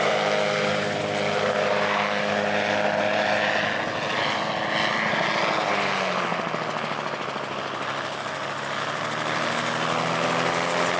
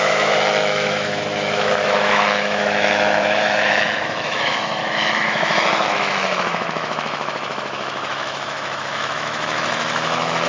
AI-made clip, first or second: second